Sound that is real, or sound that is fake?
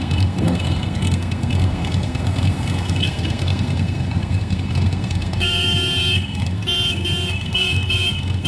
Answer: fake